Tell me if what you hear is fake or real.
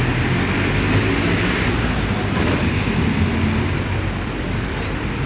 real